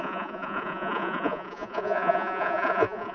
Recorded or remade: remade